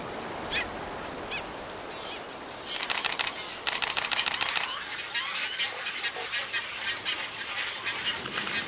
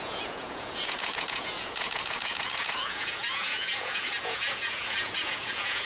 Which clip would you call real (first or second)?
first